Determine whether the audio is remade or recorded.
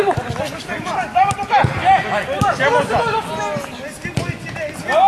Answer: recorded